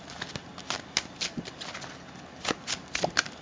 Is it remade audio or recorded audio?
recorded